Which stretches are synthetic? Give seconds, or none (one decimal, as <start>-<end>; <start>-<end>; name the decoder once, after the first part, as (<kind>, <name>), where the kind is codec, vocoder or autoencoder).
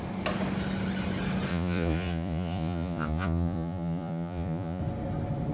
1.5-4.8 (vocoder, Vocos)